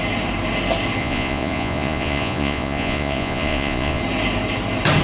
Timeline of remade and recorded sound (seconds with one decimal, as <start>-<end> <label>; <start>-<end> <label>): 0.0-1.0 recorded; 1.0-4.0 remade; 4.0-5.0 recorded